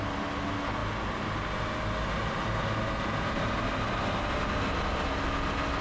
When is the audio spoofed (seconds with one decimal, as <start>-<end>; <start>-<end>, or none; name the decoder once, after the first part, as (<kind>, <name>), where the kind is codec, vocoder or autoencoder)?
none